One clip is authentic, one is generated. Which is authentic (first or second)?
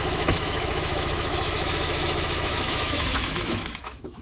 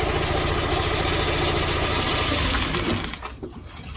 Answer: second